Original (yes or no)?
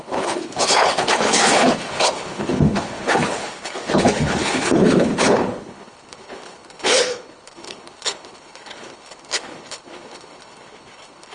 no